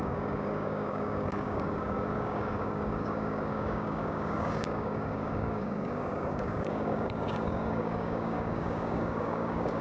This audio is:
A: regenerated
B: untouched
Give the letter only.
A